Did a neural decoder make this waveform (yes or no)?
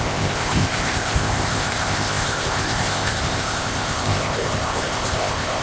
yes